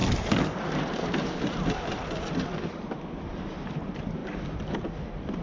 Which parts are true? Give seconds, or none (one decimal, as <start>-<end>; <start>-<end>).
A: 0.0-5.4